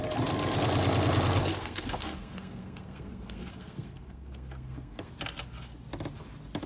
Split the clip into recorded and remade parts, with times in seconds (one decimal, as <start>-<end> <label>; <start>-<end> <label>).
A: 0.0-1.5 recorded; 1.5-5.1 remade; 5.1-6.7 recorded